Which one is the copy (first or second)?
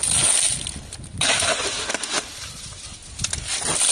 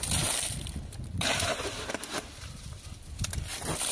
second